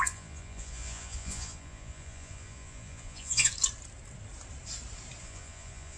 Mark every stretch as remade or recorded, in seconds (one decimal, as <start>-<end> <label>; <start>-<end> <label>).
0.0-3.5 remade; 3.5-5.2 recorded; 5.2-6.0 remade